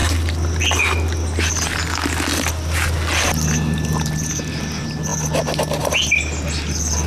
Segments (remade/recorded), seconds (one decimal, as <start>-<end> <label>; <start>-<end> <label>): 0.0-7.1 recorded